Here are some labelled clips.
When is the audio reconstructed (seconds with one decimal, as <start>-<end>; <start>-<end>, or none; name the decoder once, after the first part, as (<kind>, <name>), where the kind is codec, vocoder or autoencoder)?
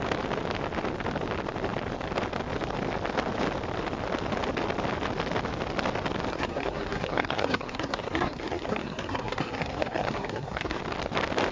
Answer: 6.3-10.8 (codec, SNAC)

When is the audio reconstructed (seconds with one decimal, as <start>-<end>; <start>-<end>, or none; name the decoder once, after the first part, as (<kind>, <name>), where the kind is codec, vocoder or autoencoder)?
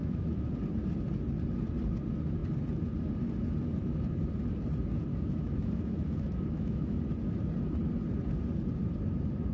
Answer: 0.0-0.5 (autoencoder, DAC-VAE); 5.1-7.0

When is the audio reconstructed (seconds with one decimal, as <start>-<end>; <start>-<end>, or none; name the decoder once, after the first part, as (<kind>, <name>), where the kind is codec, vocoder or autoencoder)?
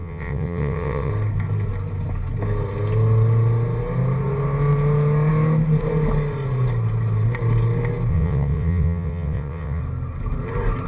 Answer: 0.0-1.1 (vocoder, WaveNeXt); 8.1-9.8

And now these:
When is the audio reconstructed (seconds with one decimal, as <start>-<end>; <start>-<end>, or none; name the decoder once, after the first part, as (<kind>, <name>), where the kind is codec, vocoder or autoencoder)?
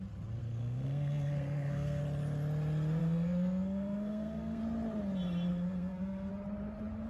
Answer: 0.4-2.0 (codec, SNAC); 3.0-4.6; 5.5-6.3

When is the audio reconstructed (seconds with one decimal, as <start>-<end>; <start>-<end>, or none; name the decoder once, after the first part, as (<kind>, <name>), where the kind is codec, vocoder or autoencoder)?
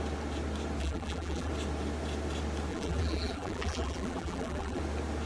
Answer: 0.8-1.5 (vocoder, BigVGAN v2); 2.7-4.8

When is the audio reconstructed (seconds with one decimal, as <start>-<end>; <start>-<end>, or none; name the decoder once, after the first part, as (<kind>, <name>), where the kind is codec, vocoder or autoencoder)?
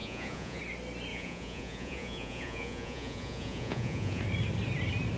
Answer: 0.0-0.6 (vocoder, Vocos); 1.1-4.2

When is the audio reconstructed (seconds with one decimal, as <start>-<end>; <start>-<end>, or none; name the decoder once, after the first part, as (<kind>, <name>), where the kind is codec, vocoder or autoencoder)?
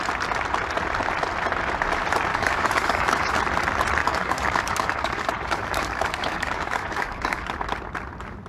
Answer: 2.3-3.4 (codec, DAC); 4.0-7.5